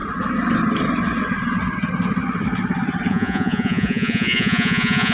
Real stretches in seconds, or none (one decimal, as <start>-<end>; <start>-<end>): 0.0-3.1